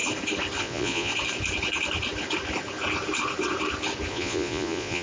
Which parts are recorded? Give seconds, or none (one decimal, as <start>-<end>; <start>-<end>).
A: 0.0-0.6; 1.1-4.1